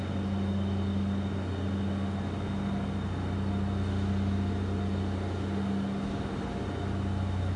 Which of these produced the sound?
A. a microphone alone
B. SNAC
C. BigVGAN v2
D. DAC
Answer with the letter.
A